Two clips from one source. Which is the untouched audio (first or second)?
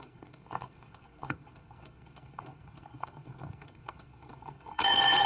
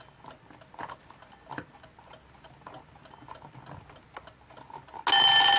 second